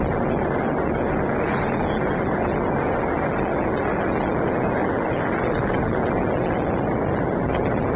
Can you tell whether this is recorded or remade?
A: recorded